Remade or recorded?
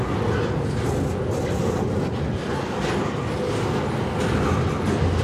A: recorded